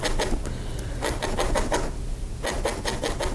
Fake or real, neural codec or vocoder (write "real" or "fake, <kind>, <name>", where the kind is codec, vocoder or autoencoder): real